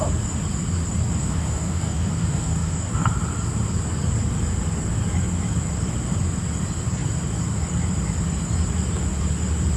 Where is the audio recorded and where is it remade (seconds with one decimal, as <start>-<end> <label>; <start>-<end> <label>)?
0.0-1.2 recorded; 1.2-2.9 remade; 2.9-9.8 recorded